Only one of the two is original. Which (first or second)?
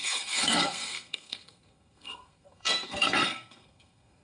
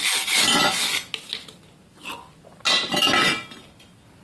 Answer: second